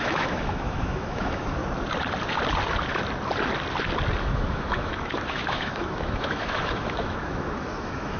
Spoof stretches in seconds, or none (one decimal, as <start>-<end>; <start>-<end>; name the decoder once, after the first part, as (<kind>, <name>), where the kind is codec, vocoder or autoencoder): 0.0-1.6 (autoencoder, DAC-VAE); 4.2-8.2